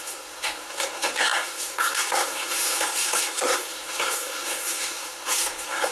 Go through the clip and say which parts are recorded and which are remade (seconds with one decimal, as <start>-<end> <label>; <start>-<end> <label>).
0.0-5.9 remade